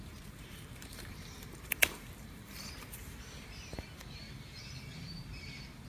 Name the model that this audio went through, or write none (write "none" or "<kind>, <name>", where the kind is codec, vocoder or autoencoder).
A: vocoder, BigVGAN v2